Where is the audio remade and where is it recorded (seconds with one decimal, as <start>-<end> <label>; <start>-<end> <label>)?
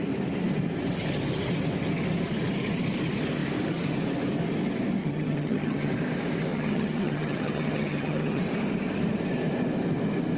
0.0-5.0 recorded; 5.0-5.9 remade; 5.9-6.5 recorded; 6.5-8.4 remade; 8.4-10.4 recorded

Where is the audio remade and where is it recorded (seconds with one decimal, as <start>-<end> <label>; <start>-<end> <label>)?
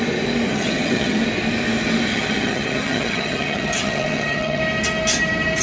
0.0-0.5 recorded; 0.5-1.2 remade; 1.2-2.1 recorded; 2.1-4.6 remade; 4.6-5.6 recorded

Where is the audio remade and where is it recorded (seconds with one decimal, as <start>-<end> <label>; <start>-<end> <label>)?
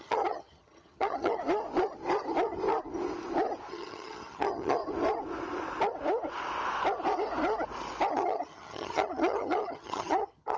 0.0-1.4 remade; 1.4-3.7 recorded; 3.7-4.8 remade; 4.8-8.1 recorded; 8.1-10.6 remade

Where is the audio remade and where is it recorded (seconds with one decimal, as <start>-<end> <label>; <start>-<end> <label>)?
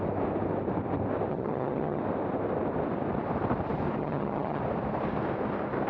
0.0-1.3 recorded; 1.3-2.0 remade; 2.0-4.0 recorded; 4.0-4.6 remade; 4.6-5.9 recorded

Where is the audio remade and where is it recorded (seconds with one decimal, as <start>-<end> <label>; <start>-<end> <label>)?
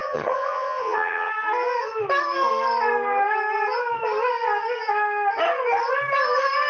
0.0-1.3 remade; 1.3-6.7 recorded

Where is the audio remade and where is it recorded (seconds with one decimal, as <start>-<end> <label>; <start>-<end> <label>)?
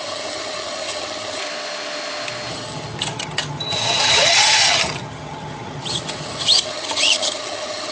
0.0-1.4 remade; 1.4-2.5 recorded; 2.5-7.9 remade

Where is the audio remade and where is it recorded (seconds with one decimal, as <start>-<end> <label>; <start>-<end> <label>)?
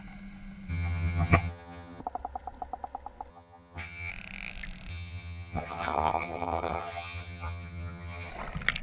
0.0-0.7 recorded; 0.7-2.0 remade; 2.0-3.3 recorded; 3.3-4.1 remade; 4.1-4.9 recorded; 4.9-8.3 remade; 8.3-8.8 recorded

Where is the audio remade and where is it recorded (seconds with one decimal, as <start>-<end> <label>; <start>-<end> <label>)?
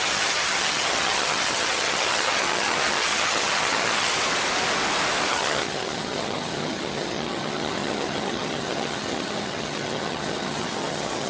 0.0-4.1 remade; 4.1-5.2 recorded; 5.2-11.3 remade